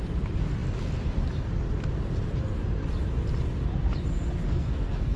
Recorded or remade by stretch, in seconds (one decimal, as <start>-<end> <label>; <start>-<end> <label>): 0.0-4.4 recorded; 4.4-5.2 remade